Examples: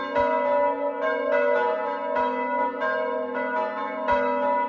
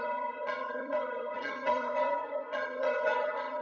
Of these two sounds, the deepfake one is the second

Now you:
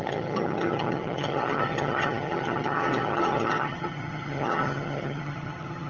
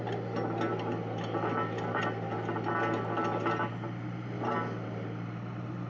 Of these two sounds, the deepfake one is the first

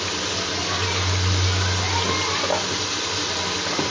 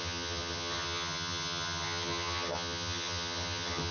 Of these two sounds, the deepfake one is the second